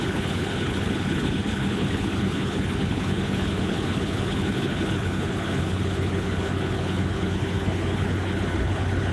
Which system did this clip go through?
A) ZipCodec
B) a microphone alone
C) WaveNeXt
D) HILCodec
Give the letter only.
D